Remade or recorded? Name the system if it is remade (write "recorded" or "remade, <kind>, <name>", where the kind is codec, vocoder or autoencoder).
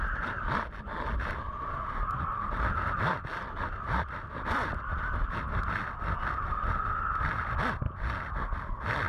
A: recorded